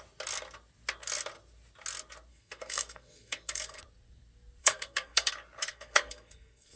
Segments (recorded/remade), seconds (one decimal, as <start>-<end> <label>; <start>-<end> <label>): 0.0-2.3 recorded; 2.3-3.8 remade; 3.8-4.6 recorded; 4.6-5.3 remade; 5.3-5.7 recorded; 5.7-6.8 remade